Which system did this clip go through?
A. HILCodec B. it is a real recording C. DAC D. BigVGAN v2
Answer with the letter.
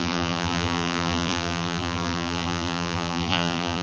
D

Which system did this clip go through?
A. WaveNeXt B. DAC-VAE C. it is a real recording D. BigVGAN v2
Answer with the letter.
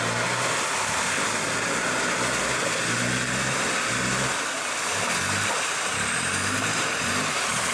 C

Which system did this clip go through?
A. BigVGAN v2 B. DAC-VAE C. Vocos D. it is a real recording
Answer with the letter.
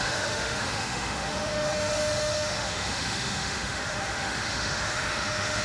B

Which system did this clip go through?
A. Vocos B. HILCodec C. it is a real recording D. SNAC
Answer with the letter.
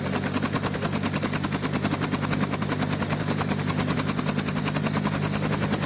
C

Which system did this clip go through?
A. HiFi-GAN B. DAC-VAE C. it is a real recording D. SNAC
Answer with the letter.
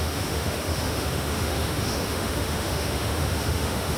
B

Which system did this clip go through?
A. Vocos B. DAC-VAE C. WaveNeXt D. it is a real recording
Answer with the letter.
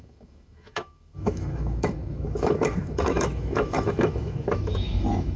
B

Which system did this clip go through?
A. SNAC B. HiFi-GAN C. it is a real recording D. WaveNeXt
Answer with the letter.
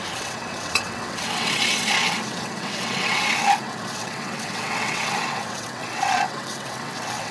D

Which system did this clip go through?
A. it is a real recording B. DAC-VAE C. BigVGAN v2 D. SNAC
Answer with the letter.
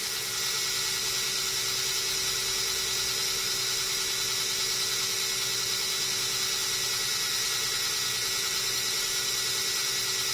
A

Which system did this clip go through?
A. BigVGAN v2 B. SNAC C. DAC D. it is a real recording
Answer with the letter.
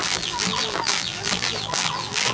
A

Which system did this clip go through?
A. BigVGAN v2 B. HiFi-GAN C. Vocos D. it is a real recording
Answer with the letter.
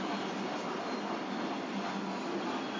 D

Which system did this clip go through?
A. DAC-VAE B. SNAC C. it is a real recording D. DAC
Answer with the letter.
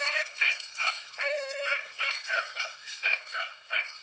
B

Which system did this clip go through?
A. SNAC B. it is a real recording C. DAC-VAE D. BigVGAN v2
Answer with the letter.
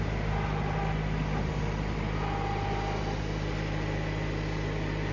B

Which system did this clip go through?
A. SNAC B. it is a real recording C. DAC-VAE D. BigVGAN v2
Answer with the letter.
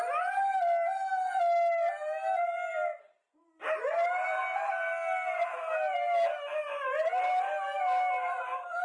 B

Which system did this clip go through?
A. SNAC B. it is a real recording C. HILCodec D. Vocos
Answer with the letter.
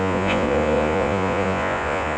D